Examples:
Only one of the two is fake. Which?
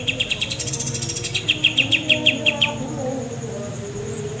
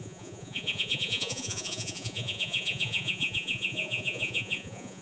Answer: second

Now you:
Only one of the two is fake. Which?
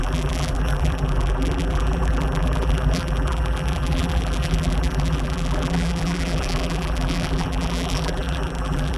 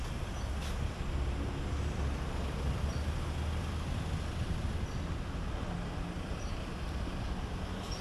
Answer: first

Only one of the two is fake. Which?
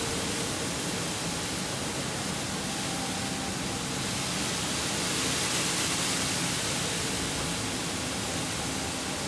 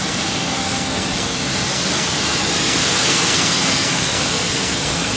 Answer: second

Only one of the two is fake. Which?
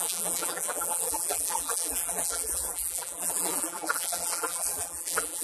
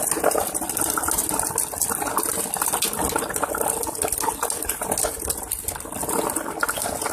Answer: first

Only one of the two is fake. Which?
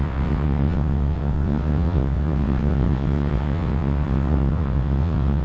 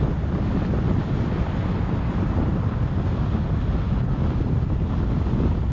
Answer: first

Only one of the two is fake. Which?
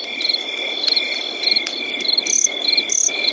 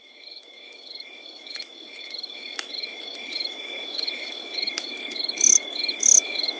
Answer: second